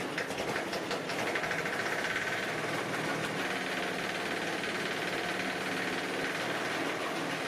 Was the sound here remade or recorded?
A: recorded